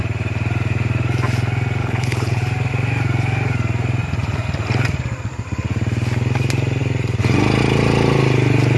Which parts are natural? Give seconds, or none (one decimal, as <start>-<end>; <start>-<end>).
0.0-1.8; 2.4-8.8